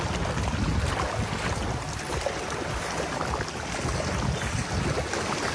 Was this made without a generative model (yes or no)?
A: yes